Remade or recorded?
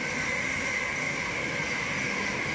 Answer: recorded